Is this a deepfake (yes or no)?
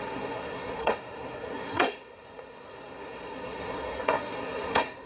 yes